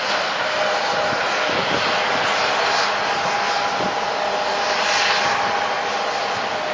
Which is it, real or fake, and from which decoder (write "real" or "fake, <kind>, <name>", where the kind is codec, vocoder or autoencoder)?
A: real